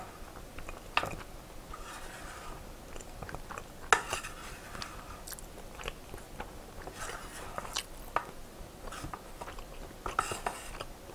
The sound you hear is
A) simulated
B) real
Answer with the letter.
B